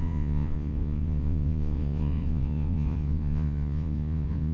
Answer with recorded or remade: remade